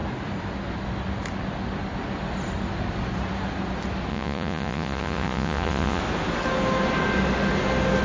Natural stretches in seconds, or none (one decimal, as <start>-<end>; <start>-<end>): 0.0-4.1; 6.0-8.0